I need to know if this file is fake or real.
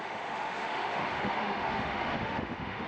fake